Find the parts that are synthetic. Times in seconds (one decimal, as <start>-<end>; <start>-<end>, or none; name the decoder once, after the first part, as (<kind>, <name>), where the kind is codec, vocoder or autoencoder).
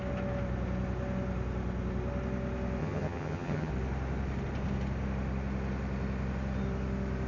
2.8-3.7 (vocoder, HiFi-GAN)